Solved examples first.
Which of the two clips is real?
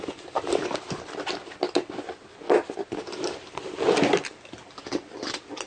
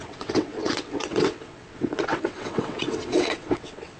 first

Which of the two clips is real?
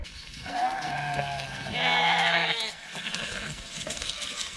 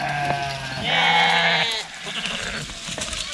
second